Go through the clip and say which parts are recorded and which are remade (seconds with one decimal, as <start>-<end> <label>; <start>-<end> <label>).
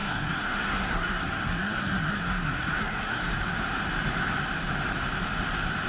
0.0-3.3 remade; 3.3-5.9 recorded